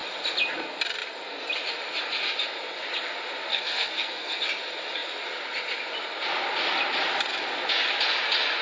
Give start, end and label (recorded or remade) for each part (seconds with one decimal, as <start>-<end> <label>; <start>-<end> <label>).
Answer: 0.0-3.5 recorded; 3.5-4.4 remade; 4.4-8.6 recorded